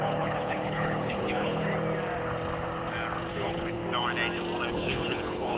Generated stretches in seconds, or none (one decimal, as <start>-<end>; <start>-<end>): 0.0-1.7; 3.3-3.8; 4.7-5.6